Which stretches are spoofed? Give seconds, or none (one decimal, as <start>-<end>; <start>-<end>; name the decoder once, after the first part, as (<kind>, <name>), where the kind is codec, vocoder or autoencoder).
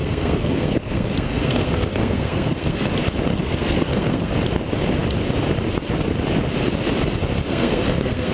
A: 0.0-2.9 (codec, SNAC); 3.3-4.3; 7.5-8.3